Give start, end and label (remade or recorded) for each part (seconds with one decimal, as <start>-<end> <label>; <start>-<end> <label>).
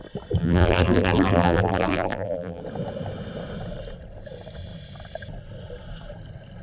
0.0-0.4 recorded; 0.4-2.6 remade; 2.6-6.6 recorded